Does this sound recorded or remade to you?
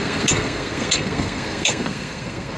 remade